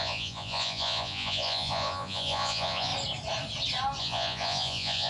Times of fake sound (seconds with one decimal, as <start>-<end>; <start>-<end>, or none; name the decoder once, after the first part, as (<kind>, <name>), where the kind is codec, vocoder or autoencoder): 0.0-2.9 (vocoder, Vocos); 4.0-5.1